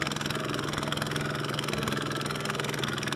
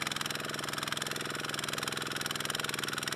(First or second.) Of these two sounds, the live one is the second